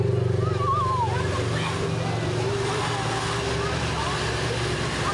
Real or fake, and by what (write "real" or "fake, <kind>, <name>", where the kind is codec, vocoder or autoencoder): real